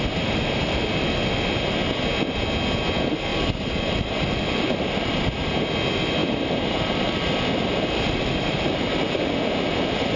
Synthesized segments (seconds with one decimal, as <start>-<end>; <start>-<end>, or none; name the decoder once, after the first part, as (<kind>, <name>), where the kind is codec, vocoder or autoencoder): 3.3-5.6 (vocoder, BigVGAN v2); 6.2-9.2